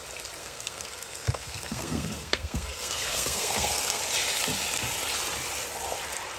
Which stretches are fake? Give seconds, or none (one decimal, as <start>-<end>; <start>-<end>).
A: 0.4-4.0